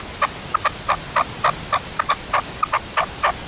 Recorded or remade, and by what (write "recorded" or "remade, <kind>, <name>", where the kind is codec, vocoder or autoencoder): recorded